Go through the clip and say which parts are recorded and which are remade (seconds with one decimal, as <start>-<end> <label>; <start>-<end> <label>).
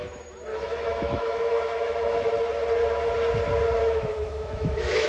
0.0-0.5 recorded; 0.5-2.3 remade; 2.3-3.8 recorded; 3.8-5.1 remade